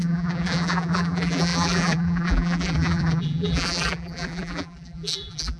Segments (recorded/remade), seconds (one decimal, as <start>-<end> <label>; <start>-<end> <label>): 0.0-5.6 remade

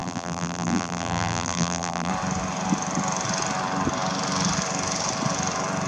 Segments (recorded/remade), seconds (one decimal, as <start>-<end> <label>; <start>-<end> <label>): 0.0-2.1 remade; 2.1-5.9 recorded

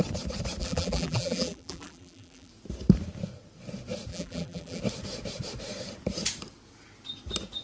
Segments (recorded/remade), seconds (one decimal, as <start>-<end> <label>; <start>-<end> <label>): 0.0-0.6 recorded; 0.6-2.5 remade; 2.5-4.1 recorded; 4.1-4.8 remade; 4.8-7.6 recorded

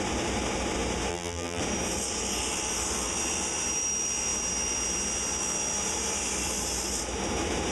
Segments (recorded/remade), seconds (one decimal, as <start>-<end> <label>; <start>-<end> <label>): 0.0-1.1 recorded; 1.1-1.6 remade; 1.6-7.7 recorded

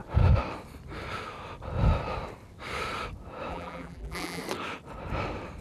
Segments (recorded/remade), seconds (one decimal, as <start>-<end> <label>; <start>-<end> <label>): 0.0-3.5 recorded; 3.5-4.4 remade; 4.4-5.6 recorded